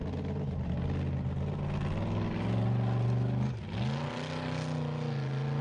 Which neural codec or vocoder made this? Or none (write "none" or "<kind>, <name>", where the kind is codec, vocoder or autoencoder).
none